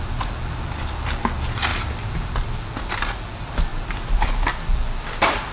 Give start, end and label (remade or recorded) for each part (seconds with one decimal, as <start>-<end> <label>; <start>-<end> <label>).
0.0-5.5 recorded